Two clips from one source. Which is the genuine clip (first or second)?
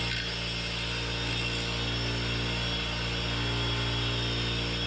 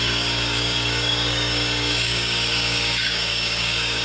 first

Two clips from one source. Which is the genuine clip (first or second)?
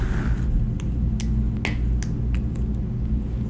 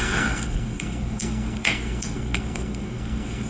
first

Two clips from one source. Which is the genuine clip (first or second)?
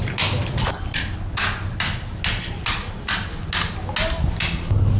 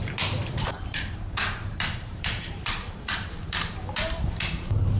first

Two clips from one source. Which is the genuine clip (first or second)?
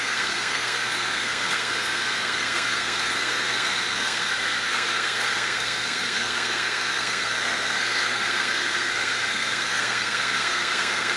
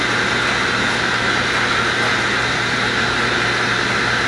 second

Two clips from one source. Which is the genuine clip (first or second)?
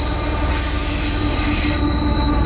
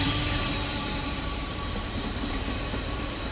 first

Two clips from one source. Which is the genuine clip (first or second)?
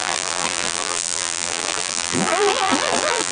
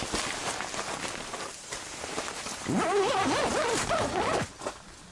second